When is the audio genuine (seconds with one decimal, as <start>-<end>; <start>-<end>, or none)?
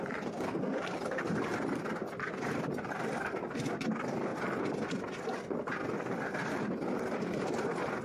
1.5-2.0; 4.3-6.1